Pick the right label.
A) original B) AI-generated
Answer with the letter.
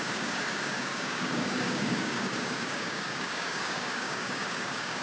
B